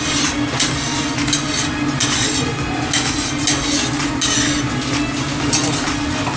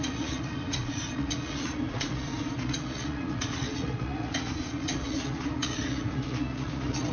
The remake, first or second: second